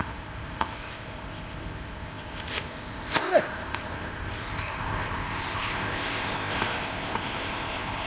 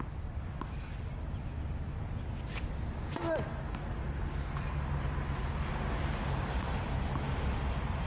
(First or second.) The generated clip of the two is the first